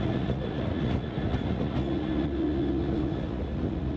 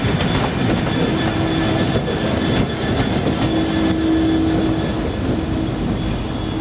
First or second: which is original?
second